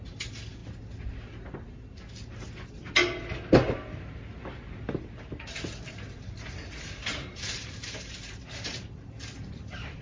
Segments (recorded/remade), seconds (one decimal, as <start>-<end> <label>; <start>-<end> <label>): 0.0-7.2 recorded; 7.2-8.1 remade; 8.1-10.0 recorded